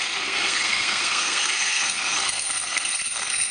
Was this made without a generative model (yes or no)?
no